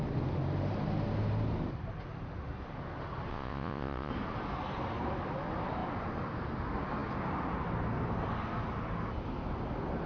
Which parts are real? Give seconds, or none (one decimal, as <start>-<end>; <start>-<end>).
0.0-3.3; 4.1-10.1